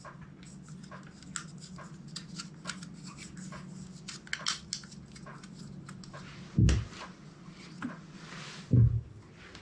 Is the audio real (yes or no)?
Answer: yes